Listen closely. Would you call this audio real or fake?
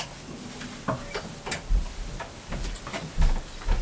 real